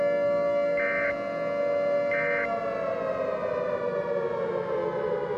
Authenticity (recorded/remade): recorded